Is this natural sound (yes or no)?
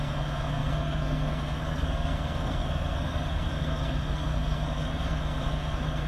no